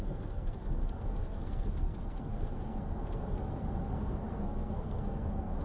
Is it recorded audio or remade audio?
remade